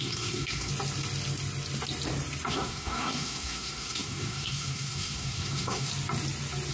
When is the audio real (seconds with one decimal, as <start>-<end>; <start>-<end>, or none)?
0.7-2.5; 5.9-6.7